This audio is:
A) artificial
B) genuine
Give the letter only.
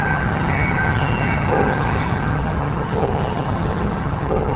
A